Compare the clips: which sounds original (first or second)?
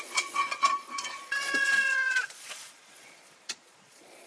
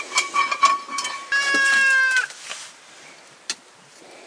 second